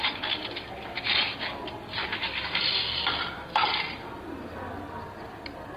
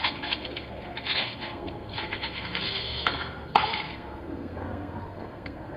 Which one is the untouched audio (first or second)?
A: first